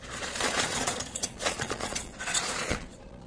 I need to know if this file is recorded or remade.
remade